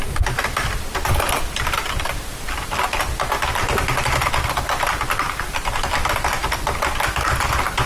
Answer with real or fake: real